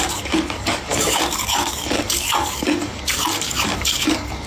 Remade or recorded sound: remade